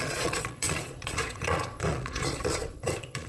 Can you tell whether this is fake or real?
fake